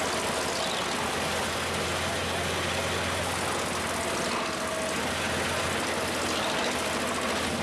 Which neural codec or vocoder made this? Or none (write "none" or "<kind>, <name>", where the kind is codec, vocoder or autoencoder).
none